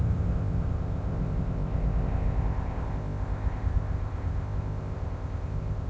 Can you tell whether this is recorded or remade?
remade